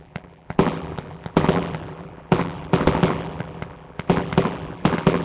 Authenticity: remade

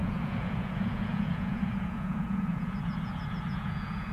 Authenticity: remade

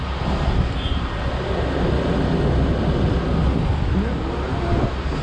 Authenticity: recorded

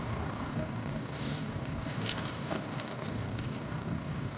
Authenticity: remade